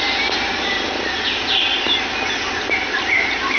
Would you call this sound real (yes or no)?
yes